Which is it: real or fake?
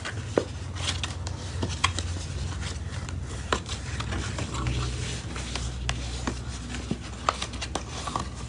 real